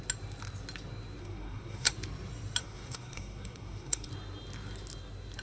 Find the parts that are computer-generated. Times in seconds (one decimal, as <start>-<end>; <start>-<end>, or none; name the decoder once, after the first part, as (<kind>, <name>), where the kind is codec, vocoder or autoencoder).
1.2-1.9 (codec, SNAC); 2.6-4.1